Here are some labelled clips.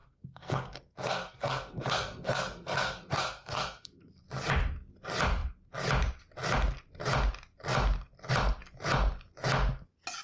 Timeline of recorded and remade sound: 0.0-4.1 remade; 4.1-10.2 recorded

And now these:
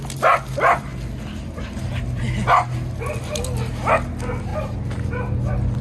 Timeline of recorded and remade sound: 0.0-5.8 recorded

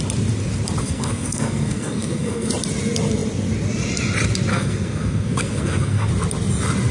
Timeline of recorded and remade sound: 0.0-0.8 recorded; 0.8-2.5 remade; 2.5-4.5 recorded; 4.5-6.1 remade; 6.1-6.9 recorded

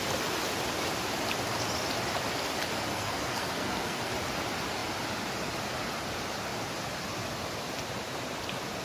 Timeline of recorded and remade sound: 0.0-2.9 recorded; 2.9-4.1 remade; 4.1-8.8 recorded

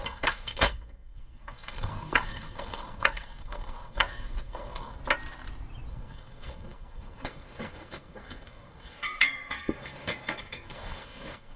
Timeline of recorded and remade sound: 0.0-5.0 remade; 5.0-5.9 recorded; 5.9-11.6 remade

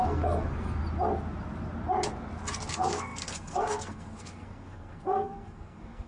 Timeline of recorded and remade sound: 0.0-0.8 remade; 0.8-2.7 recorded; 2.7-6.1 remade